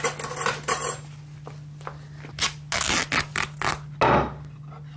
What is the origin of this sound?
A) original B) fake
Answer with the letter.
A